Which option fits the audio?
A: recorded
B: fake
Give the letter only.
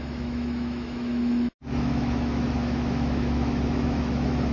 B